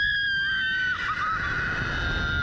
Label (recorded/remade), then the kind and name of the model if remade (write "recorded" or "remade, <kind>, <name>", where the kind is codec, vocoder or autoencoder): recorded